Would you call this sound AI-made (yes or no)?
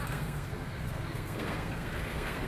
yes